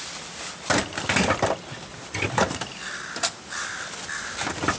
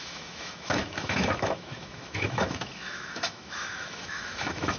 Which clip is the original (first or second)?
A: first